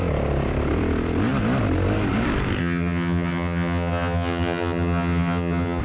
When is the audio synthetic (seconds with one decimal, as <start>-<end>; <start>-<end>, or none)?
2.6-5.8